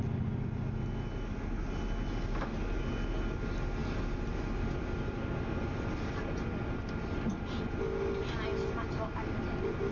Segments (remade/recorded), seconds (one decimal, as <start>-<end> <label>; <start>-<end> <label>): 0.0-9.9 recorded